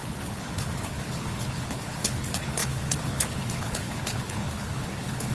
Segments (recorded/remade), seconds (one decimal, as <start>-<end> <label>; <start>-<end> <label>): 0.0-5.3 remade